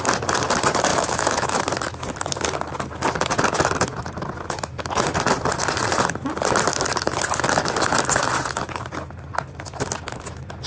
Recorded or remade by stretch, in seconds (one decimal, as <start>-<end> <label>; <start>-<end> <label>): 0.0-0.9 recorded; 0.9-1.6 remade; 1.6-10.7 recorded